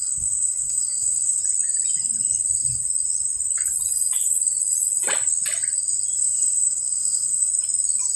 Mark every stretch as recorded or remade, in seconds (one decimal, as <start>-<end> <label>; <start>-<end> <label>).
0.0-1.4 remade; 1.4-6.2 recorded; 6.2-7.5 remade; 7.5-8.2 recorded